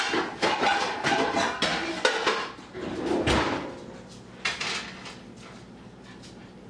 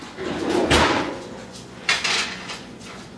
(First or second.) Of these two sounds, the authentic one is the first